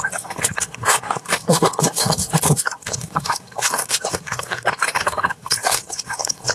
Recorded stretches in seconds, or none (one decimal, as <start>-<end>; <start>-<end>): none